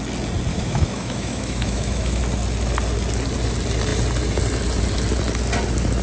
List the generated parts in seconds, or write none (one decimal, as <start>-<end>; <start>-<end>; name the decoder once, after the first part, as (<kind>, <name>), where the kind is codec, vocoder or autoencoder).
0.5-2.2 (autoencoder, DAC-VAE)